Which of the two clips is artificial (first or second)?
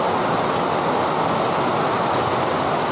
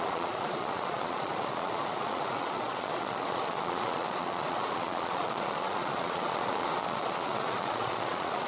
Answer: second